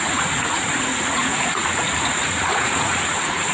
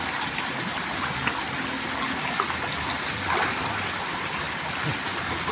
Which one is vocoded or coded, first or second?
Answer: first